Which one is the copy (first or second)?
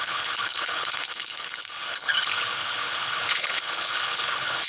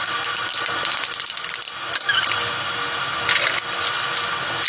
first